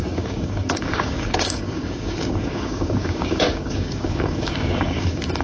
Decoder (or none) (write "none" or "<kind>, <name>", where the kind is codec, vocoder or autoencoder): codec, DAC